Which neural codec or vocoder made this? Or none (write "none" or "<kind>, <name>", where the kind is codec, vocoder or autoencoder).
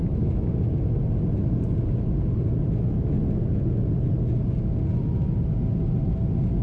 none